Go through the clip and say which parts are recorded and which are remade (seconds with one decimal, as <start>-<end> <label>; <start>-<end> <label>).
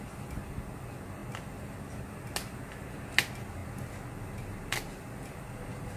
0.0-6.0 recorded